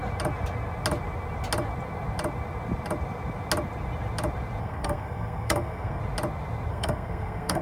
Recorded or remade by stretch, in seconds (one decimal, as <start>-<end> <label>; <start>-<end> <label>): 0.0-4.6 recorded; 4.6-6.0 remade; 6.0-6.7 recorded; 6.7-7.6 remade